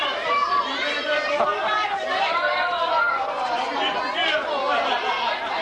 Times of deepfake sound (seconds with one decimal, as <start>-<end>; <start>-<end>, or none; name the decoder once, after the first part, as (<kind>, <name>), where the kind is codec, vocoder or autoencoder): 0.4-3.8 (vocoder, BigVGAN v2)